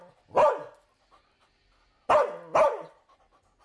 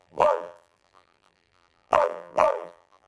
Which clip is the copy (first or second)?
second